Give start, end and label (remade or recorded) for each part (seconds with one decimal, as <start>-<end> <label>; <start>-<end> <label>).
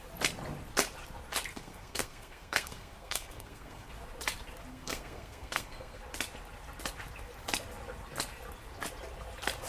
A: 0.0-1.5 recorded; 1.5-3.9 remade; 3.9-4.7 recorded; 4.7-6.0 remade; 6.0-9.7 recorded